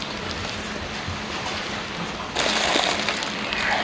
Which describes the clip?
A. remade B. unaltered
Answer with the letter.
B